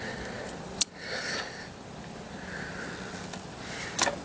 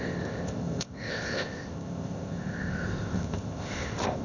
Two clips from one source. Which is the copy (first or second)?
second